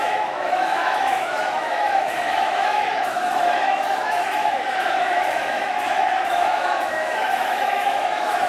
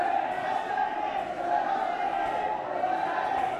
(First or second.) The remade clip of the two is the first